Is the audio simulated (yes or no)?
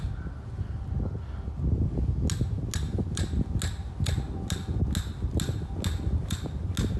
no